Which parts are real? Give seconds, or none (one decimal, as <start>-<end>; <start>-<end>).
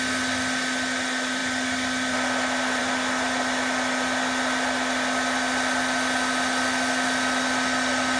0.0-8.2